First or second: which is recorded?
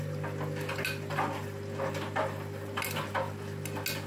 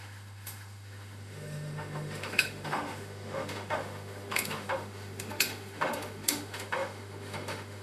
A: first